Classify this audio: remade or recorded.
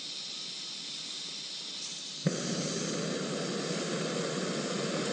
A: recorded